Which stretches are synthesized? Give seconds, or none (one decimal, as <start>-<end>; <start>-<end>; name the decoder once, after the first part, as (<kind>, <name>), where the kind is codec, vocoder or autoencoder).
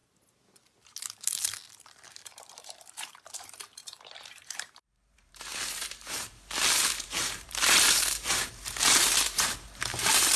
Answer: 1.9-10.4 (vocoder, BigVGAN v2)